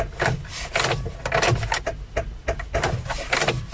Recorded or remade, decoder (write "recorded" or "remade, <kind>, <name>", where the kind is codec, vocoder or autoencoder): recorded